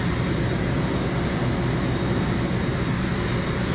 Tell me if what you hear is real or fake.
real